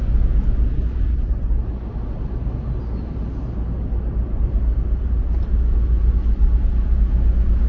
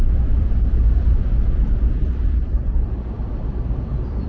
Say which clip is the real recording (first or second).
first